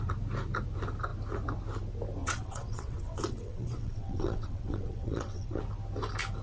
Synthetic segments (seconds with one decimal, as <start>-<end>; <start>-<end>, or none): 2.2-5.6